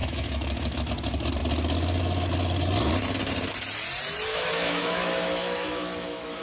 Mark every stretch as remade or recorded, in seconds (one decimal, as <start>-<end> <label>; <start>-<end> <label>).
0.0-0.9 remade; 0.9-4.3 recorded; 4.3-6.4 remade